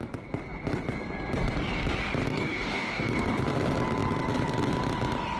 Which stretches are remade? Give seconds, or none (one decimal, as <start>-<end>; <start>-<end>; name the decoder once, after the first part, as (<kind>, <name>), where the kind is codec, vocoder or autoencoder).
2.3-3.4 (codec, DAC)